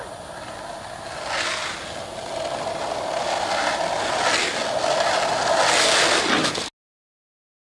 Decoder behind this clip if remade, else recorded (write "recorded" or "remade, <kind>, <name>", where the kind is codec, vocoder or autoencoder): recorded